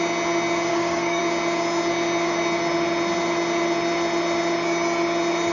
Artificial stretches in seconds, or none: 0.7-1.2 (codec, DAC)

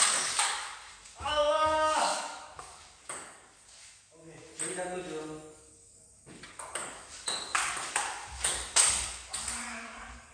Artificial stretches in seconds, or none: 0.0-4.5 (codec, DAC); 5.6-10.3

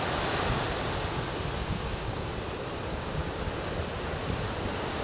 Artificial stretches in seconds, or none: 1.6-2.3 (codec, DAC); 2.9-3.4

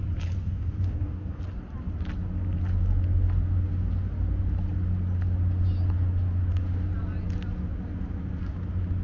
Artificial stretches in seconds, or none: 0.4-1.4 (codec, DAC)

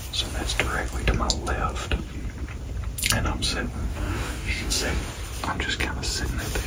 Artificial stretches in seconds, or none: 3.9-5.0 (codec, DAC)